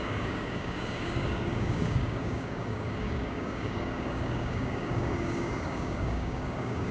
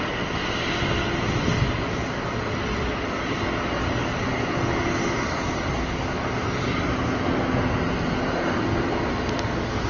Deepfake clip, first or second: first